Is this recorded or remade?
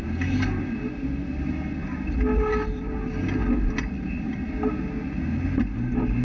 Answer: recorded